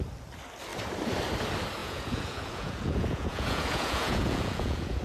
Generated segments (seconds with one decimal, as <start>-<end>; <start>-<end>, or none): 1.8-5.0